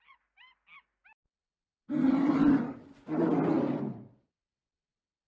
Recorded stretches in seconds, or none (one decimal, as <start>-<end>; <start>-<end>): 0.0-5.3